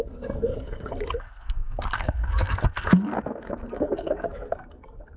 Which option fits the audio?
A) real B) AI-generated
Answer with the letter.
B